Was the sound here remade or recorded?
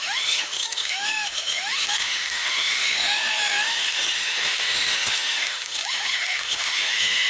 remade